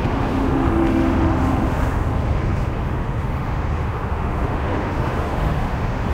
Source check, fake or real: fake